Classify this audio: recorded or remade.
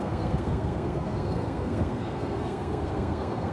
remade